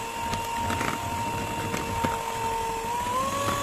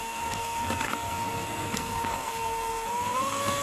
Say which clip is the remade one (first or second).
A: second